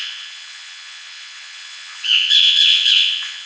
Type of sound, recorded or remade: remade